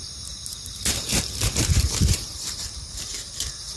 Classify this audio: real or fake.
fake